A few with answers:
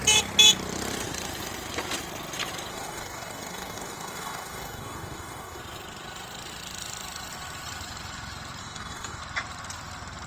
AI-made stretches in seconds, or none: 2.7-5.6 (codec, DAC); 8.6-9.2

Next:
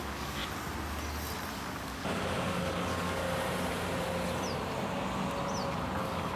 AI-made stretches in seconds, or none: 0.0-0.4 (codec, DAC); 1.5-3.2; 6.0-6.4

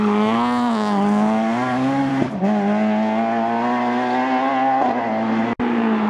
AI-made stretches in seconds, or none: 0.0-2.1 (codec, DAC)

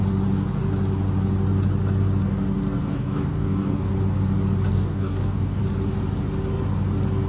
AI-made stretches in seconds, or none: 2.8-3.9 (codec, DAC); 4.7-5.6